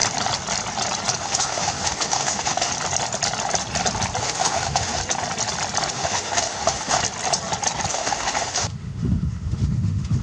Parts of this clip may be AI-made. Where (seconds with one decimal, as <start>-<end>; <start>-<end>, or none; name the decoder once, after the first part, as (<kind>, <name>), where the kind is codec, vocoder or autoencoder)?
1.2-2.7 (autoencoder, DAC-VAE); 4.2-5.0; 5.9-7.0; 7.9-10.2